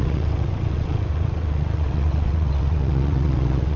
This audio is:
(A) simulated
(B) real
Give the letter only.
A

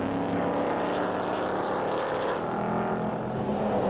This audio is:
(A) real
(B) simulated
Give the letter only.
A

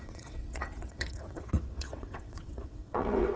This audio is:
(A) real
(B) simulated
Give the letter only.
B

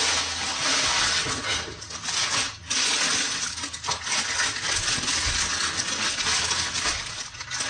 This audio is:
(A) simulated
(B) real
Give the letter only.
B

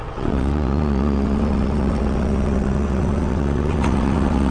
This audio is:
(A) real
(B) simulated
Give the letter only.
B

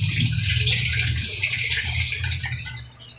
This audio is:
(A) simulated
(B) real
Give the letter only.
B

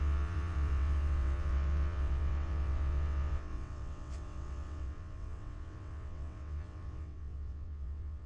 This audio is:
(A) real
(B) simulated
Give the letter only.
B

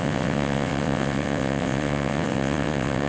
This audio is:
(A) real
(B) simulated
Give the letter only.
B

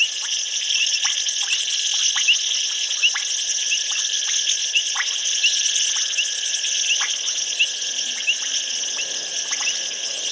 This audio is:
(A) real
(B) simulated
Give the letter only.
A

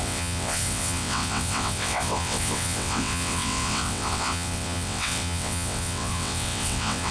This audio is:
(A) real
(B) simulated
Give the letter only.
B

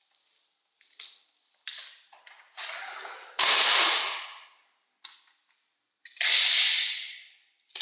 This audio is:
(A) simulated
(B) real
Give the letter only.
B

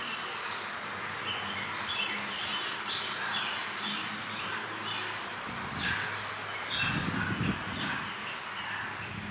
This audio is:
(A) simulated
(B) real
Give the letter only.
B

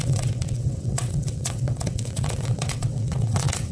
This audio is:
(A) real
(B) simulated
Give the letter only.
B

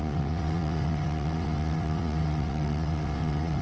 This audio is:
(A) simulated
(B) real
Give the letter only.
A